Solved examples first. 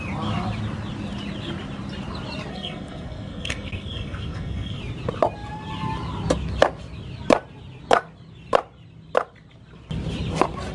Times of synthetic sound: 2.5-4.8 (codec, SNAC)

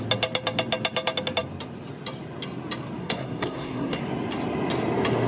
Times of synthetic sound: 3.0-4.0 (codec, SNAC)

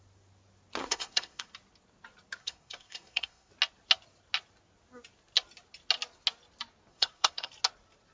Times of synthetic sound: 0.8-1.5 (codec, SNAC); 2.4-3.5; 6.9-7.5